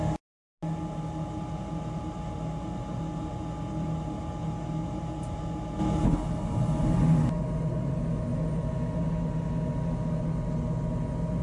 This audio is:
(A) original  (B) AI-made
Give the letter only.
A